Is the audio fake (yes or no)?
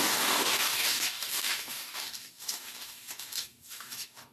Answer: yes